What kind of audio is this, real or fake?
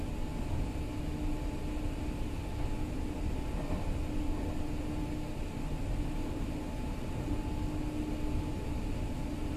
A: real